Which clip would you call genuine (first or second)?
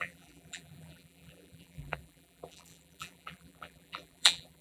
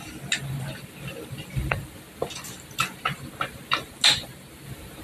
second